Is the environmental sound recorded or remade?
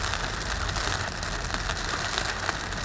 recorded